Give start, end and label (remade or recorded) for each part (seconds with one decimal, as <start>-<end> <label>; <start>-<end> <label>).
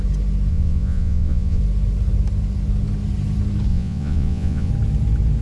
0.0-0.5 recorded; 0.5-1.6 remade; 1.6-3.7 recorded; 3.7-4.7 remade; 4.7-5.4 recorded